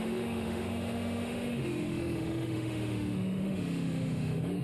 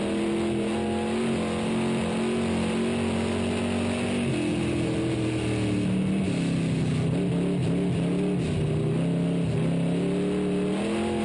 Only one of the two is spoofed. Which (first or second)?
first